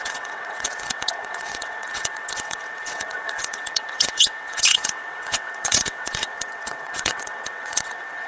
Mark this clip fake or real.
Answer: fake